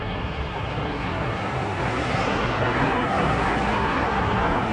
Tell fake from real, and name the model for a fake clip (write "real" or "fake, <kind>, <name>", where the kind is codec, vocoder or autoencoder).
fake, codec, SNAC